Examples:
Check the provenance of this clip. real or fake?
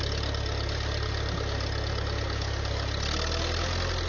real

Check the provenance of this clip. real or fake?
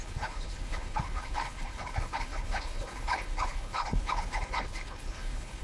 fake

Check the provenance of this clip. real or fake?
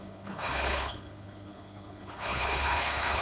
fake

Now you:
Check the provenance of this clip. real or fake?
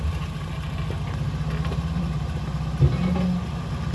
real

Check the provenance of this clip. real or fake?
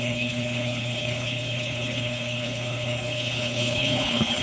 fake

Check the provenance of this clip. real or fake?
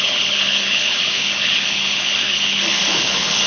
fake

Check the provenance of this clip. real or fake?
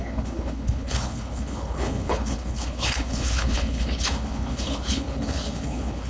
fake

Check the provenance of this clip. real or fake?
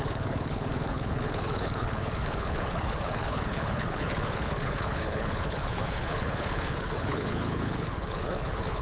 fake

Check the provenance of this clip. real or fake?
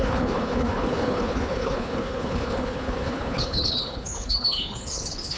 fake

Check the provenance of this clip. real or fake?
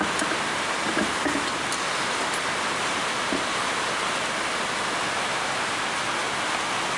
real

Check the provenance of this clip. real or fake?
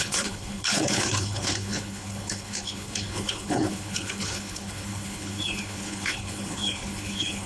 fake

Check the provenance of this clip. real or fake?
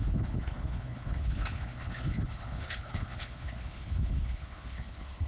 fake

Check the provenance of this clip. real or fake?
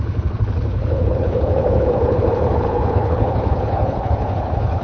fake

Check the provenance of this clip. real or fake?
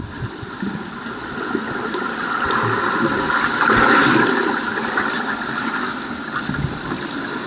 real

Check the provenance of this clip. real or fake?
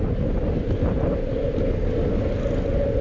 real